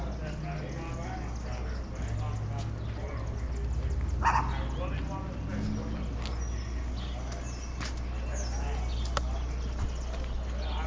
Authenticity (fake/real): real